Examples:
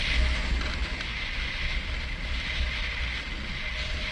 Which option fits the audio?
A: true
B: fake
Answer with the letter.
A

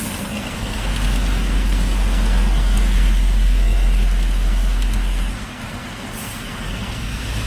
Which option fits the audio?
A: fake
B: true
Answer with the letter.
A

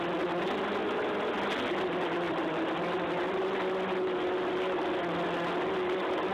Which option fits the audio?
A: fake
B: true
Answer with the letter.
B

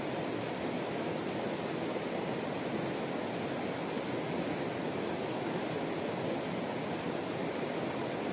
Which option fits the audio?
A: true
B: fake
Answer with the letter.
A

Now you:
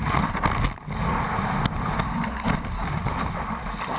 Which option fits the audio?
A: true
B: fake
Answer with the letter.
A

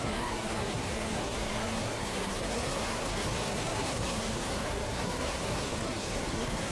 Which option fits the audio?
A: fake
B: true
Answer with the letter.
A